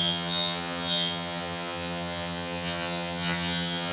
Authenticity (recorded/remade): remade